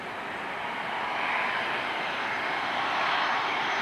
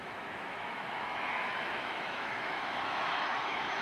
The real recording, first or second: first